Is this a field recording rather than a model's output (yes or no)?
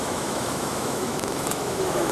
no